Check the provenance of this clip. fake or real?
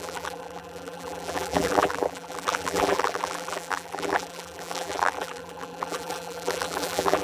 fake